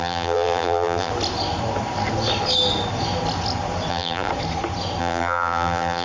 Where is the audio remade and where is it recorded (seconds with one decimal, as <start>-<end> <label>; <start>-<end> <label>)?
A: 0.0-1.1 remade; 1.1-3.9 recorded; 3.9-4.3 remade; 4.3-5.0 recorded; 5.0-6.0 remade